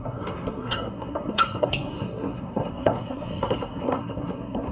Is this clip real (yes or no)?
no